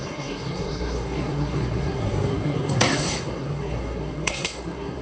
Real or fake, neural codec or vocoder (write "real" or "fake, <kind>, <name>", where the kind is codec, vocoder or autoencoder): fake, codec, SNAC